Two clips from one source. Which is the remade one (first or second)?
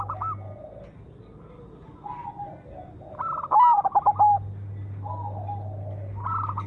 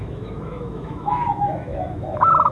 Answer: second